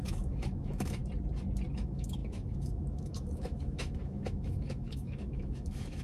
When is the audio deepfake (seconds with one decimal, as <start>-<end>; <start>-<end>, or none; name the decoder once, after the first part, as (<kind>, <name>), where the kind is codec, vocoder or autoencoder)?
0.0-1.0 (autoencoder, DAC-VAE); 1.7-6.0